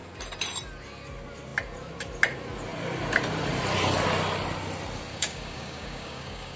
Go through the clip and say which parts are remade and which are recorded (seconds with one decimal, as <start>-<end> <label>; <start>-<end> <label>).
0.0-5.1 recorded; 5.1-6.6 remade